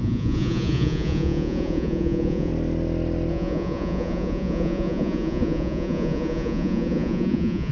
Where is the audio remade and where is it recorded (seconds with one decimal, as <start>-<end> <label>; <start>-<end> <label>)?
0.0-2.5 remade; 2.5-3.3 recorded; 3.3-7.7 remade